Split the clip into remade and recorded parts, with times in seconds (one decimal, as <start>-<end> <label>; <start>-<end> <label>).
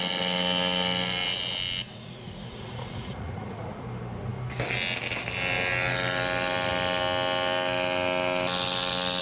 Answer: 0.0-1.9 recorded; 1.9-3.8 remade; 3.8-9.2 recorded